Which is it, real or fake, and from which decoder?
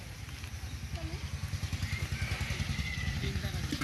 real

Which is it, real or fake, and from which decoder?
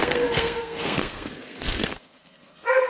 fake, codec, SNAC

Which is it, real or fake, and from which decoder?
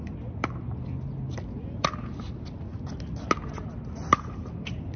real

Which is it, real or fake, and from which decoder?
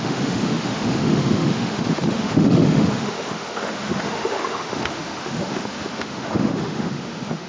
fake, autoencoder, DAC-VAE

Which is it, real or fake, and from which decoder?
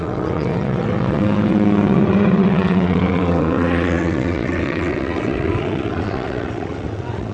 fake, vocoder, WaveNeXt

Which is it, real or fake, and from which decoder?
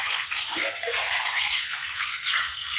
fake, codec, SNAC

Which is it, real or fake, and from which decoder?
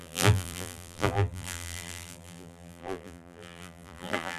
fake, vocoder, BigVGAN v2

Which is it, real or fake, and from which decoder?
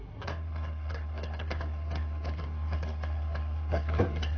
fake, codec, SNAC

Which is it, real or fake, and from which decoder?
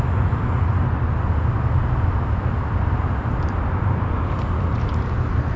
real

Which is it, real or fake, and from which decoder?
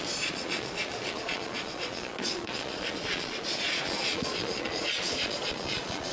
fake, vocoder, Vocos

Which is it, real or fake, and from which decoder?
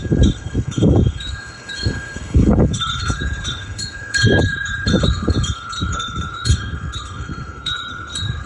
fake, codec, HILCodec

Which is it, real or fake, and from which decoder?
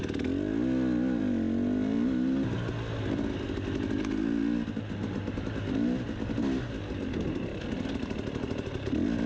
real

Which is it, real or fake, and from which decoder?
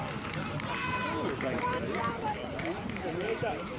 real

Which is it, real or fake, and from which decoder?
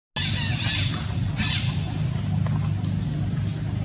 real